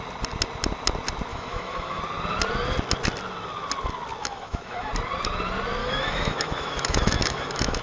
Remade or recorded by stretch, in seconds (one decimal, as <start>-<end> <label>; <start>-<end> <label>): 0.0-1.3 recorded; 1.3-2.0 remade; 2.0-4.2 recorded; 4.2-4.9 remade; 4.9-5.8 recorded; 5.8-7.8 remade